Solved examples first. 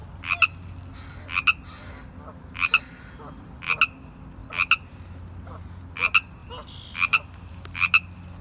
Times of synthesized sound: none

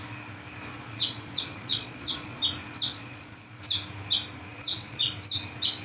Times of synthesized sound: 0.7-2.4 (vocoder, Vocos); 2.9-3.6; 4.5-5.1

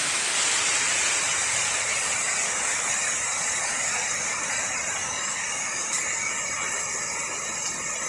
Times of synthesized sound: 1.5-4.5 (codec, DAC); 5.0-6.3

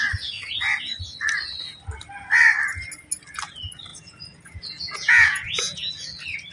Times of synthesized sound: 3.9-5.9 (vocoder, Vocos)

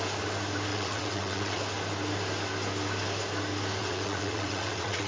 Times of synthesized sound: 0.7-1.6 (vocoder, WaveNeXt); 3.8-5.1